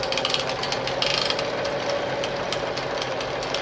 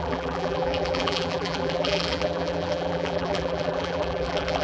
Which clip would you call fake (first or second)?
second